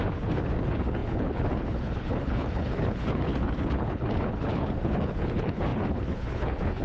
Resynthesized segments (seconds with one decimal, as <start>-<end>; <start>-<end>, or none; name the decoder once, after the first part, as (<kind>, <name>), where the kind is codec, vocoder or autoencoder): 0.0-6.8 (codec, HILCodec)